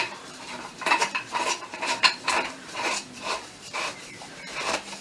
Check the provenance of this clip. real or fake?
fake